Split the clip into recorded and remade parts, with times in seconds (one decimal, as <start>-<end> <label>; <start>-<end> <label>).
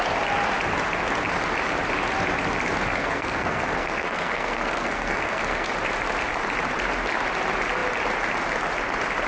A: 0.0-2.9 recorded; 2.9-5.7 remade; 5.7-9.3 recorded